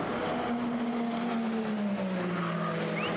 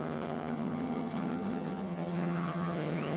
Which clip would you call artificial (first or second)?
second